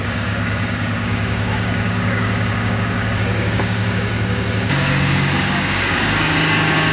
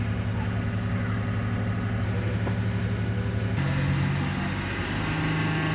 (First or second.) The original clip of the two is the second